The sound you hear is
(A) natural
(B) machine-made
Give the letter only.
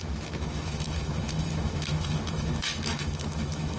B